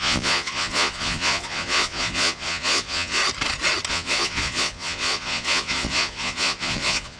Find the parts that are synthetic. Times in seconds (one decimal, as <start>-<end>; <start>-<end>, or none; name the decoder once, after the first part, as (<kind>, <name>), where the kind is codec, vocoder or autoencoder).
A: 0.0-3.2 (vocoder, Vocos); 3.9-7.2

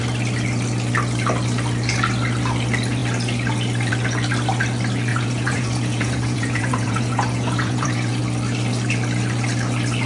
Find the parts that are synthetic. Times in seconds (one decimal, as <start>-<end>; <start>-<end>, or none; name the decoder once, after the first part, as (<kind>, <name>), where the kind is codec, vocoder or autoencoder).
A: 5.1-8.2 (vocoder, Vocos)

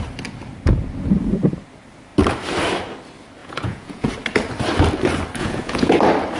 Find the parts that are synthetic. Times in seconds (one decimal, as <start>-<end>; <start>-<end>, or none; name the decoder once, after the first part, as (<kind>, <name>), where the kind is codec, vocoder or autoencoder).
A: 3.4-4.1 (vocoder, Vocos); 5.4-5.9